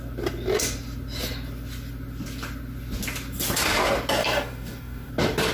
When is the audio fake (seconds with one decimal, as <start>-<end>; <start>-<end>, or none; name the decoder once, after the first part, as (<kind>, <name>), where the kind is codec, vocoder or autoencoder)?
4.2-5.1 (codec, DAC)